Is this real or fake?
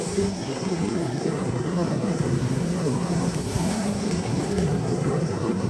fake